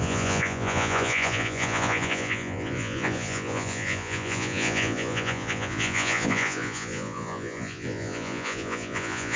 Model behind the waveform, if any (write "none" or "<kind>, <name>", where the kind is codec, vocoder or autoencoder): vocoder, Vocos